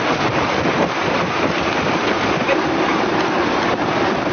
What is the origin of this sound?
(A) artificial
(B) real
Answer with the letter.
A